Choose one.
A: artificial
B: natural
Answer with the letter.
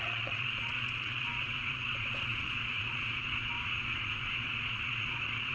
A